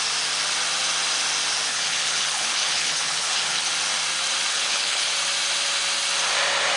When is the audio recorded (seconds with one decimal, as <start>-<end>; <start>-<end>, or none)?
0.0-1.7; 3.7-4.5; 5.1-6.8